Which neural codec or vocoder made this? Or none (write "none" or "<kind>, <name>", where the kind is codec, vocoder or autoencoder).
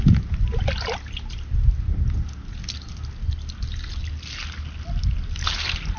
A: none